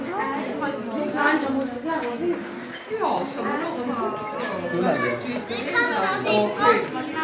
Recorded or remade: recorded